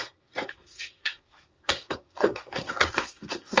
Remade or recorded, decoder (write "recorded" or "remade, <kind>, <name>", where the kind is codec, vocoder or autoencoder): remade, codec, SNAC